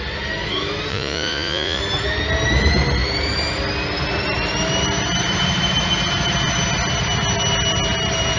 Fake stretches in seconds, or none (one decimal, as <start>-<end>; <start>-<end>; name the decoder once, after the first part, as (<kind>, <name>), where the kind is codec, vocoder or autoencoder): 0.9-1.8 (vocoder, Vocos)